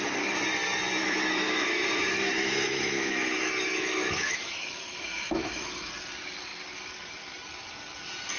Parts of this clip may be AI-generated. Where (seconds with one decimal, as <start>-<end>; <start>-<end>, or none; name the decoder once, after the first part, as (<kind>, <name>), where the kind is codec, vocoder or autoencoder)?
1.0-5.9 (autoencoder, DAC-VAE)